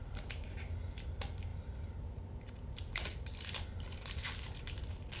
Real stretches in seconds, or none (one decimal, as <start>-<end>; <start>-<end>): 0.0-5.2